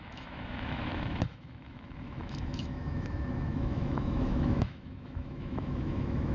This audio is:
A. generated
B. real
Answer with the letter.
A